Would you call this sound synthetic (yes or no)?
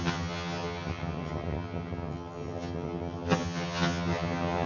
yes